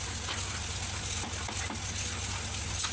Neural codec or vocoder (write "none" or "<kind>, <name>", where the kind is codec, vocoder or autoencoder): none